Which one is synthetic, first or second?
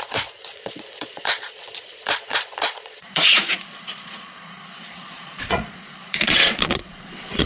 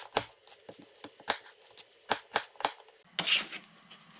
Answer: first